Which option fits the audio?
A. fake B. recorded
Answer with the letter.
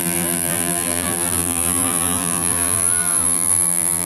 A